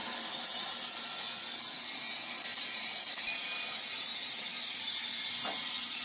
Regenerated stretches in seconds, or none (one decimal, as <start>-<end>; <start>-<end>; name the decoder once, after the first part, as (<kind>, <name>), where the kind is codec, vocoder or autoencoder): none